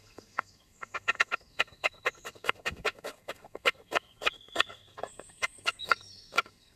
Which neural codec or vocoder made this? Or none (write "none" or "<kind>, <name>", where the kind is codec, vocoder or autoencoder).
codec, SNAC